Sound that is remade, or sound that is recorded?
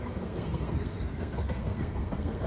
remade